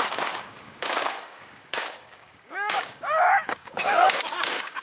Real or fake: fake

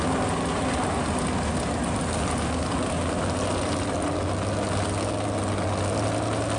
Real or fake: real